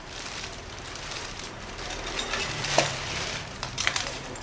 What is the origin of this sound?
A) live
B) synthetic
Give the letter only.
B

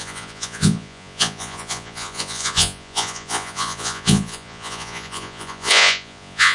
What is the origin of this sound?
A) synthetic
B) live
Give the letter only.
A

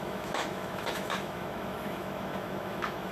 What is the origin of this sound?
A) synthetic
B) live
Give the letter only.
A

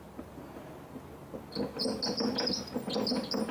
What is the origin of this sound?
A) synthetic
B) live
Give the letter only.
B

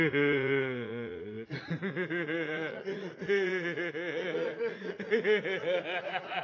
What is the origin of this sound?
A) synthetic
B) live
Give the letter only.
A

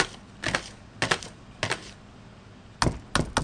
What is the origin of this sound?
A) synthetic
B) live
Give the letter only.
B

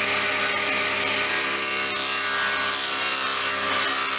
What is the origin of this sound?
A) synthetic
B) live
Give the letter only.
B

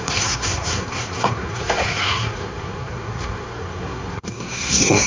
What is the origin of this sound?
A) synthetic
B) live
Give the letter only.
A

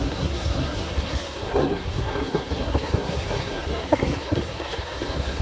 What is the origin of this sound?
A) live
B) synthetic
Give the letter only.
B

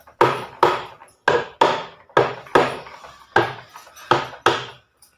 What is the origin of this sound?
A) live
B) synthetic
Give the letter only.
A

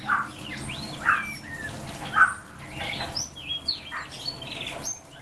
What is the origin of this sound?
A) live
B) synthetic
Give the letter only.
A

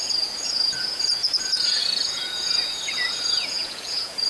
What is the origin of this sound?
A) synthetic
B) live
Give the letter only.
A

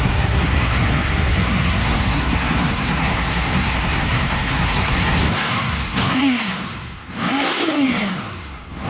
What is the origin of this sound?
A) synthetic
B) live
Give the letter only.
A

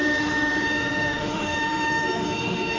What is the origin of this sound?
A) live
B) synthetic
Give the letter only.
B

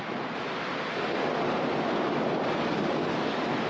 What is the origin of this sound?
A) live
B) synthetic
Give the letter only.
A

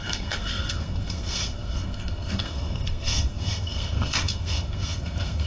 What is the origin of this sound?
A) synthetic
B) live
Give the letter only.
A